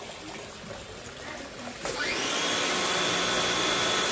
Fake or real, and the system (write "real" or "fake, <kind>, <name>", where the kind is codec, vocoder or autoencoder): real